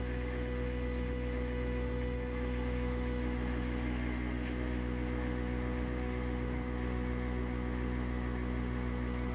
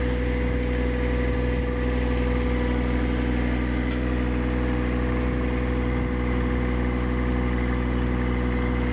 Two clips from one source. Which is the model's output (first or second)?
first